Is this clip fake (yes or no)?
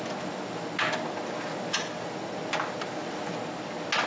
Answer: no